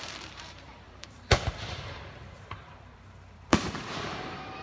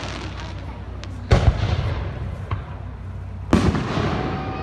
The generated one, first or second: first